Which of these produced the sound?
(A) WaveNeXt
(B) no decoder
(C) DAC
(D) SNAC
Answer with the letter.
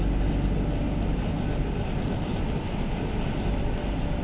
B